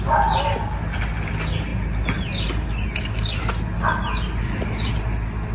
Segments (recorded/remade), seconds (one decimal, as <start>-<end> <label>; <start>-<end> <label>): 0.0-5.5 recorded